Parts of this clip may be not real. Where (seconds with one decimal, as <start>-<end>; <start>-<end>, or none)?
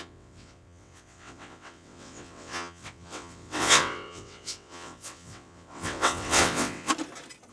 0.0-6.9